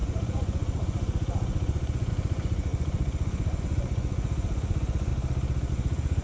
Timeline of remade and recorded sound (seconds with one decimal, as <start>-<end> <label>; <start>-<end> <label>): 0.0-5.1 remade; 5.1-5.7 recorded; 5.7-6.2 remade